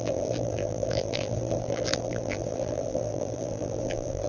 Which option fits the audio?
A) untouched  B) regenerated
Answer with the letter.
B